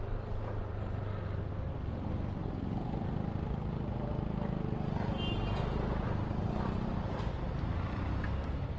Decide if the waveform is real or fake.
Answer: real